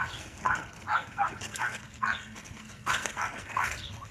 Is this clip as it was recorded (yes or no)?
no